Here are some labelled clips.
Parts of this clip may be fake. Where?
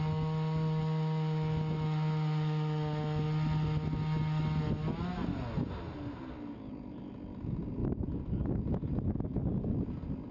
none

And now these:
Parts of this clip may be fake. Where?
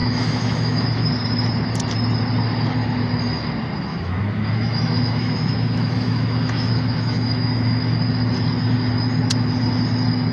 0.0-1.1 (autoencoder, DAC-VAE); 3.9-8.0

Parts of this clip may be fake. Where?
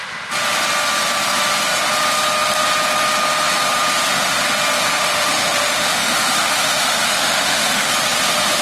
4.8-7.9 (autoencoder, DAC-VAE)